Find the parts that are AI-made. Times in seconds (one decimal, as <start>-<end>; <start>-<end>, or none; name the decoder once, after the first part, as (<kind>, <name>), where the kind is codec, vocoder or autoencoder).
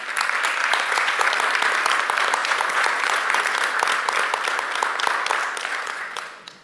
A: 0.6-1.3 (vocoder, Vocos); 2.4-3.4; 5.7-6.6